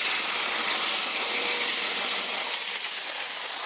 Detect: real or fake real